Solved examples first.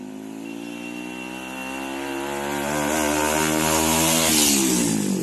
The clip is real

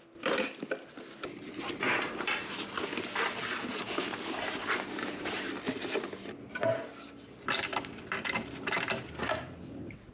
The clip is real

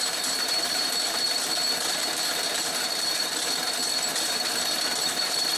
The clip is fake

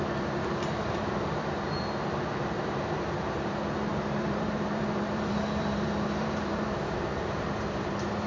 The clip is fake